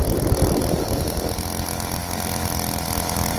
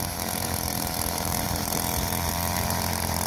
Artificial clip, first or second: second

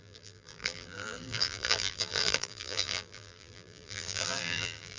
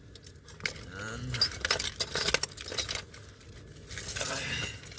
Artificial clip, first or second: first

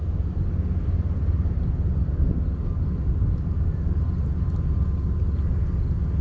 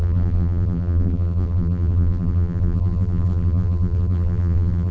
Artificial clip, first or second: second